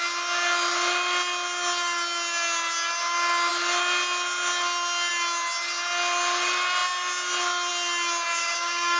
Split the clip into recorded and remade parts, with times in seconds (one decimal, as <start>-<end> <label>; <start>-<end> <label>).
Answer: 0.0-8.3 recorded; 8.3-9.0 remade